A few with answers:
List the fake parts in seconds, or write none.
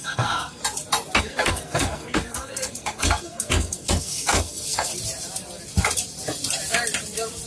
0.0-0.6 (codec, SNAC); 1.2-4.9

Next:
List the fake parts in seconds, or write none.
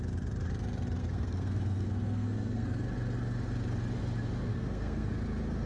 1.0-2.8 (codec, SNAC); 4.5-5.1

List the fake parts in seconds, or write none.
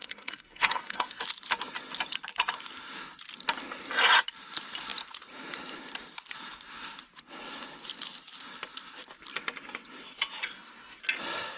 0.0-1.2 (codec, SNAC); 10.4-11.0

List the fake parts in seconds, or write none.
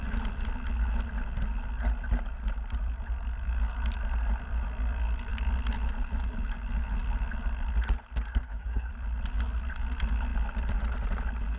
8.3-8.9 (codec, SNAC)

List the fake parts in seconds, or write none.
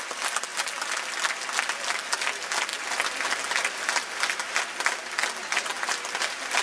none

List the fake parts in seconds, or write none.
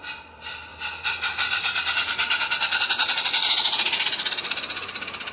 none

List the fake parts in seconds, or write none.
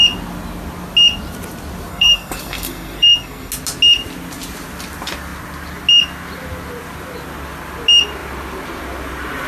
1.9-3.5 (codec, SNAC)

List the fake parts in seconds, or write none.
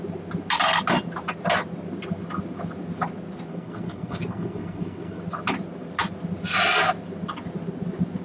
3.5-5.2 (codec, SNAC)